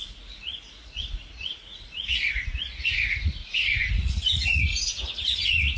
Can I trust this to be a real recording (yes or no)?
no